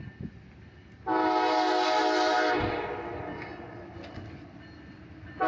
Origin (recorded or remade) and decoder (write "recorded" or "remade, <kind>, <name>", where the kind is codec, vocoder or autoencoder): recorded